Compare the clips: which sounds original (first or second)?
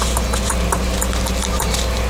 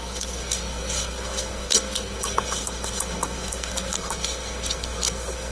first